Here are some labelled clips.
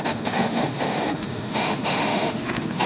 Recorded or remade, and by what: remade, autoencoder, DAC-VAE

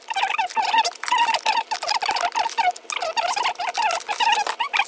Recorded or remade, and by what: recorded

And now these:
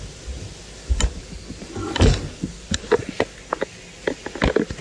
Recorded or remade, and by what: recorded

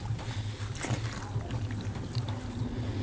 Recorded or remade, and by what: recorded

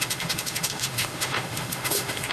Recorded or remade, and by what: remade, autoencoder, DAC-VAE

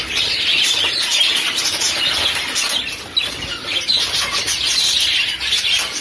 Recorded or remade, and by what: recorded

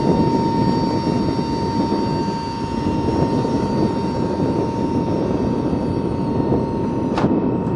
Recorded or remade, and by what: recorded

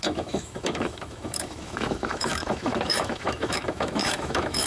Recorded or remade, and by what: remade, autoencoder, DAC-VAE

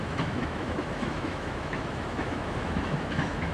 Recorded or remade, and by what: remade, autoencoder, DAC-VAE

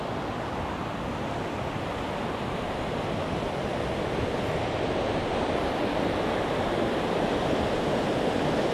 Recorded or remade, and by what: recorded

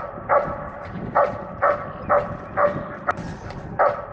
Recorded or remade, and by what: recorded